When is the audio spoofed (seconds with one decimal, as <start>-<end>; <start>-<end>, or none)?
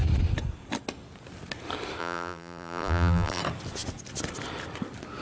2.0-3.4